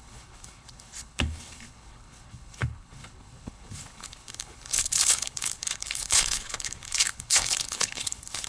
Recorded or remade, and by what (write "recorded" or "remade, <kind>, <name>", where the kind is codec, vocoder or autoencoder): remade, codec, HILCodec